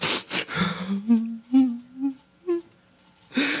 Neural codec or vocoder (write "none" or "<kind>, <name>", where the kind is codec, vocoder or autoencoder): none